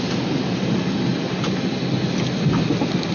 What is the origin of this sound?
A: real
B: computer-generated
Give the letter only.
A